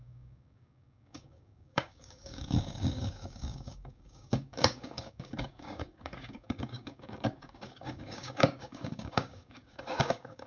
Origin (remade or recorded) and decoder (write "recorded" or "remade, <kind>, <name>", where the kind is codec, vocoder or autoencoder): remade, codec, DAC